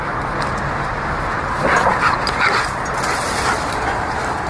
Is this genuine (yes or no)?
yes